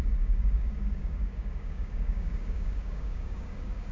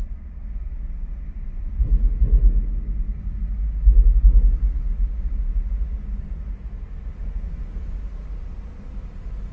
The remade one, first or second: first